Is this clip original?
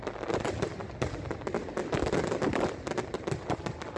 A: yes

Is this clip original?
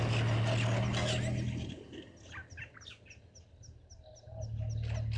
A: yes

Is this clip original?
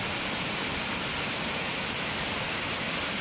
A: yes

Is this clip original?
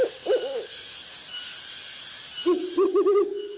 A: yes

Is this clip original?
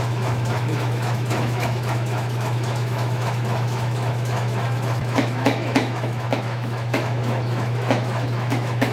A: no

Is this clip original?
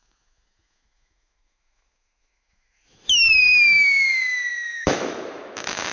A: no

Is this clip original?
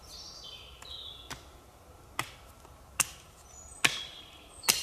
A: yes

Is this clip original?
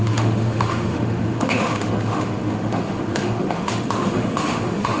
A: no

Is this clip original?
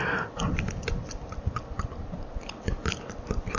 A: yes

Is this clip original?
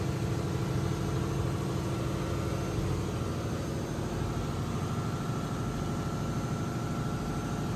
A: yes